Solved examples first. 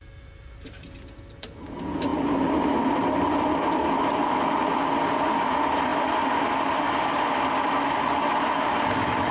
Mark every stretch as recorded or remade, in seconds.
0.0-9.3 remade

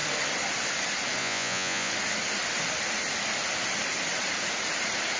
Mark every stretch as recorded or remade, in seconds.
0.0-1.2 recorded; 1.2-1.9 remade; 1.9-5.2 recorded

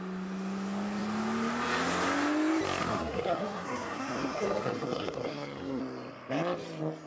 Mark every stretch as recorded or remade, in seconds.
0.0-2.9 recorded; 2.9-5.8 remade; 5.8-7.1 recorded

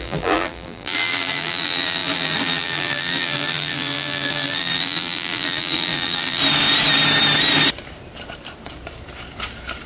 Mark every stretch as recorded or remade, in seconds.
0.0-6.4 remade; 6.4-9.9 recorded

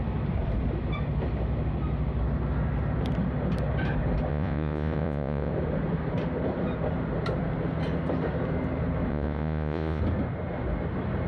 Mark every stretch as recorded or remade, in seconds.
0.0-4.3 recorded; 4.3-5.5 remade; 5.5-9.1 recorded; 9.1-10.0 remade; 10.0-11.3 recorded

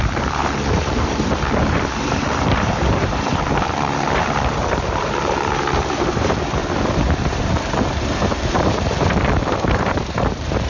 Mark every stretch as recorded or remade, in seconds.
0.0-6.6 remade; 6.6-7.4 recorded; 7.4-10.7 remade

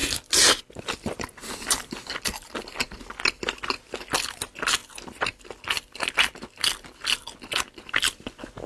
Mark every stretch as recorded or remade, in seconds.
0.0-4.8 recorded; 4.8-7.1 remade; 7.1-8.7 recorded